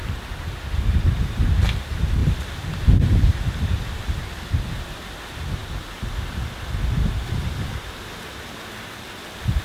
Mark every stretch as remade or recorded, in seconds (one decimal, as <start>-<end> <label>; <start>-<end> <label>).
0.0-2.2 recorded; 2.2-4.9 remade; 4.9-9.6 recorded